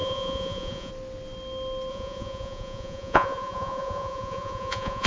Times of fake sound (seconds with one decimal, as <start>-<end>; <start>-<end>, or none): 0.0-0.9; 1.9-5.1